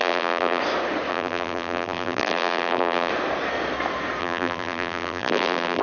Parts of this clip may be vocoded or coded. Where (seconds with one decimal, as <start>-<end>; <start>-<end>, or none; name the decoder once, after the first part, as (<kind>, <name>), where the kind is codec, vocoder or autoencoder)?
0.0-0.6 (vocoder, BigVGAN v2); 1.1-3.1; 4.2-5.8